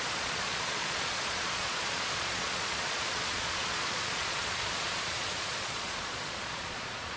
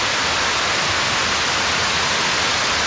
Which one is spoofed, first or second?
first